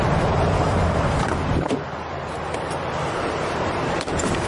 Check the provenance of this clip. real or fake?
fake